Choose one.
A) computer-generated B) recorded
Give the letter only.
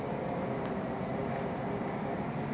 B